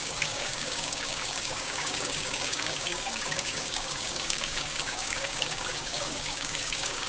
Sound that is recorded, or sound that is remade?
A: remade